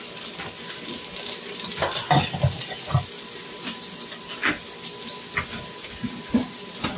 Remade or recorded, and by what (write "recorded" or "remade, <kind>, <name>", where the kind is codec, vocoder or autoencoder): recorded